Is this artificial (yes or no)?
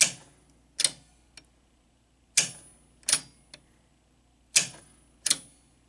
no